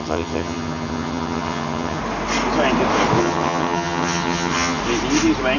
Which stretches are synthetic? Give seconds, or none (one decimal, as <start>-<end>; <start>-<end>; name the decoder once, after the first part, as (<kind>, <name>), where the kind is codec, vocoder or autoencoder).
0.0-2.0 (vocoder, HiFi-GAN); 3.2-4.8